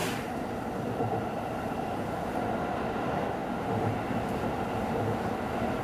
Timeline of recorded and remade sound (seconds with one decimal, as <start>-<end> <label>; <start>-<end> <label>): 0.0-5.8 recorded